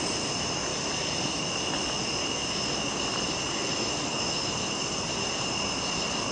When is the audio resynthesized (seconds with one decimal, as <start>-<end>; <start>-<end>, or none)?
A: 0.7-1.4